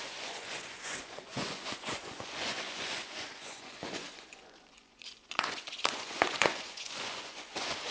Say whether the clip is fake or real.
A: fake